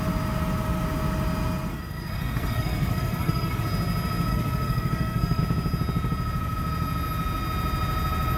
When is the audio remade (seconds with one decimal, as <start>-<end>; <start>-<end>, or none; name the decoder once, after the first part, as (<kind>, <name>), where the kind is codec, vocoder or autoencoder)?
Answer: 1.7-3.6 (codec, SNAC); 4.3-5.4